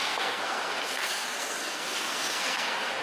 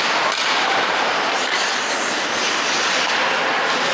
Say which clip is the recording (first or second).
second